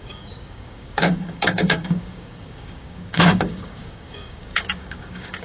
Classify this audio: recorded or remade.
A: remade